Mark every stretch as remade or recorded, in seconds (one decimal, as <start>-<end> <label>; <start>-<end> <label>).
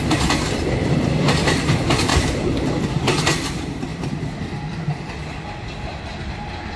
0.0-6.8 recorded